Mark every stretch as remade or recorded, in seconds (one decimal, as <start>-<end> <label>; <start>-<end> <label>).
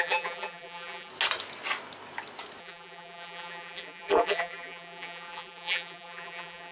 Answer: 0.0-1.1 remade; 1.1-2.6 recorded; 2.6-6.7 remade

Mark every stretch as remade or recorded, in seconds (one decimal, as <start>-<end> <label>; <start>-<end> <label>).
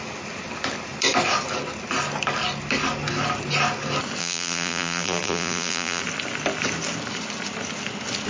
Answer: 0.0-4.2 recorded; 4.2-6.0 remade; 6.0-8.3 recorded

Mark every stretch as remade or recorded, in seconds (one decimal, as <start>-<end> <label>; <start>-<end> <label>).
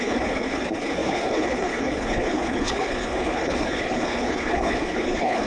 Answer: 0.0-5.5 remade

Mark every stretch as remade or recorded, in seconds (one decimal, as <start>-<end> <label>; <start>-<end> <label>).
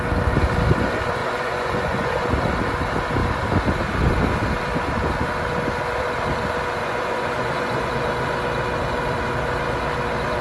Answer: 0.0-1.2 recorded; 1.2-2.3 remade; 2.3-6.8 recorded; 6.8-7.9 remade; 7.9-10.4 recorded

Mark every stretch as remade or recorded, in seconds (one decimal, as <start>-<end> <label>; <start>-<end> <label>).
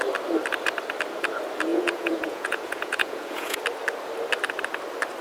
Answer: 0.0-1.7 recorded; 1.7-3.6 remade; 3.6-5.2 recorded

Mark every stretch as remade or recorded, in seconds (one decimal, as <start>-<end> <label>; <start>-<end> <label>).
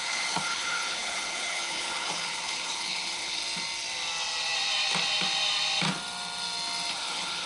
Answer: 0.0-3.4 remade; 3.4-6.9 recorded; 6.9-7.5 remade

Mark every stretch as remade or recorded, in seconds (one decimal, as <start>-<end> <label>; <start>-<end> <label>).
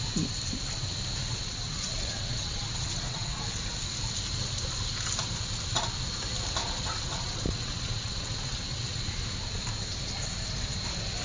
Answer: 0.0-1.2 recorded; 1.2-3.4 remade; 3.4-6.6 recorded; 6.6-9.2 remade; 9.2-11.2 recorded